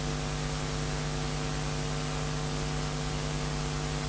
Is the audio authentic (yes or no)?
yes